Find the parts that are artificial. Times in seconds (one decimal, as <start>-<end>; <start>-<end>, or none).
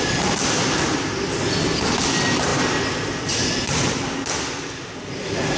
none